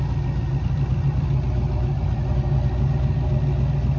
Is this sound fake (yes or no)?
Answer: no